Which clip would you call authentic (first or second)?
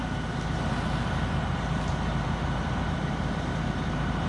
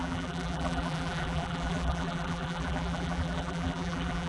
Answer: first